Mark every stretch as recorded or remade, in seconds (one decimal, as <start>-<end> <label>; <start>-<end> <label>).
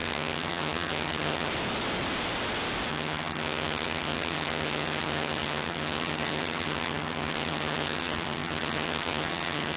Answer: 0.0-1.5 remade; 1.5-2.9 recorded; 2.9-9.8 remade